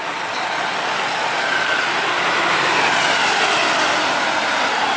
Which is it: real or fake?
real